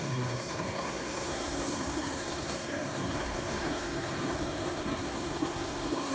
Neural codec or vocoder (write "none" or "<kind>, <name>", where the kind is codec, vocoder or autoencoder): codec, SNAC